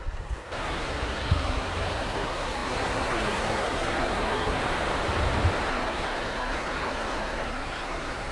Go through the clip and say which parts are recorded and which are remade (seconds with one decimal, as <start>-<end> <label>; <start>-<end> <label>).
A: 0.0-4.6 remade; 4.6-5.7 recorded; 5.7-8.3 remade